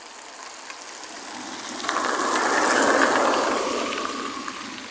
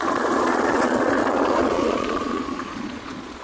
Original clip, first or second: first